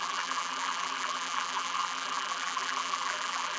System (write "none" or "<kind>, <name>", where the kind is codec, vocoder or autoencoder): vocoder, BigVGAN v2